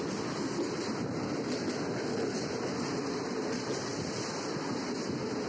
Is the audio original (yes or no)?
yes